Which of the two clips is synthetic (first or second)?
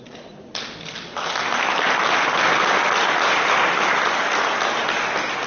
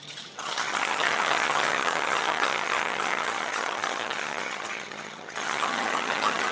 second